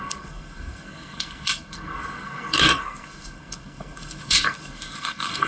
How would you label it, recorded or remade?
remade